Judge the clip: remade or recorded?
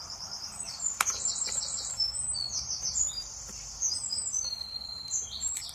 remade